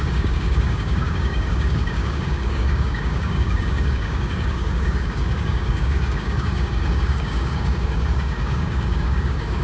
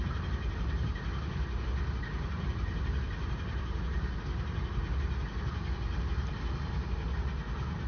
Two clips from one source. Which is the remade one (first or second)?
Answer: first